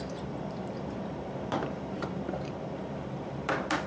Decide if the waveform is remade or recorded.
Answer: remade